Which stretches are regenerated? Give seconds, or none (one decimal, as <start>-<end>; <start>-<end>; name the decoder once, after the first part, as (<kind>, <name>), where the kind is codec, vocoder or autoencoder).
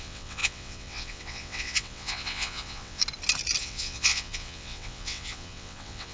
0.0-3.0 (vocoder, WaveNeXt); 3.6-6.1